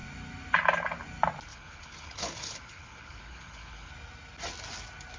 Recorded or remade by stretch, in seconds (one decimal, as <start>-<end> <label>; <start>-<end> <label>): 0.0-1.5 recorded; 1.5-3.9 remade; 3.9-5.2 recorded

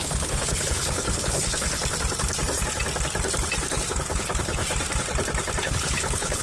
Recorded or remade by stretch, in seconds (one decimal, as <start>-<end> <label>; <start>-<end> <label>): 0.0-1.8 remade; 1.8-3.9 recorded; 3.9-4.6 remade; 4.6-5.6 recorded; 5.6-6.4 remade